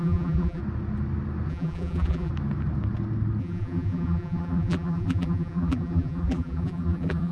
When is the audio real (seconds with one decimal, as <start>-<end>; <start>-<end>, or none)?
0.6-1.5; 2.3-3.4